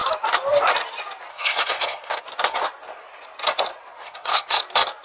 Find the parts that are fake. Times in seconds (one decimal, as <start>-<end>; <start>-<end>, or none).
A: 1.3-2.2; 4.0-4.6